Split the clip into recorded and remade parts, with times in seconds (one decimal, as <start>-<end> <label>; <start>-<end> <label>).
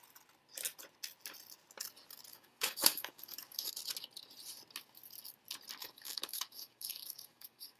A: 0.0-2.3 recorded; 2.3-3.7 remade; 3.7-5.8 recorded; 5.8-7.8 remade